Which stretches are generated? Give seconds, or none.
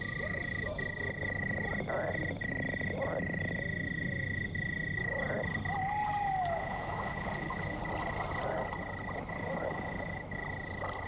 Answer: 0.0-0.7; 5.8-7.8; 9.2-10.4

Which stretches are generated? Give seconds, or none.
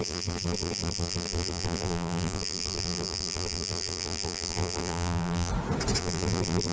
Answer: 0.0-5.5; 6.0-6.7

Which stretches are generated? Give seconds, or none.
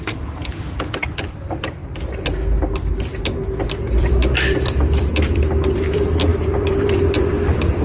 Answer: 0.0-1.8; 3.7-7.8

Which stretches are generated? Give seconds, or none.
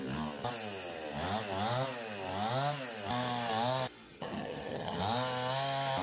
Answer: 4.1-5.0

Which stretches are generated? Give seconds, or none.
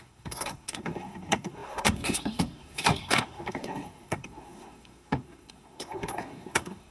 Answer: 0.0-6.9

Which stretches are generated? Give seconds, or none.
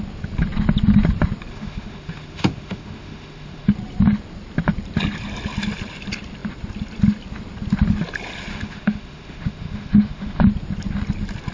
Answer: 1.5-3.7; 8.5-10.4